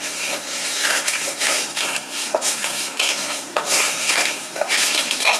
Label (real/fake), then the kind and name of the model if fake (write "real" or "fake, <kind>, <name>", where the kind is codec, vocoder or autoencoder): fake, codec, SNAC